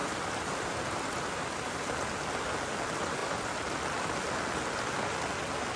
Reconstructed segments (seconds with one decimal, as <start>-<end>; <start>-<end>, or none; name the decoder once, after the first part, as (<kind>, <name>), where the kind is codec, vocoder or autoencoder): 0.0-1.7 (vocoder, BigVGAN v2); 3.2-4.6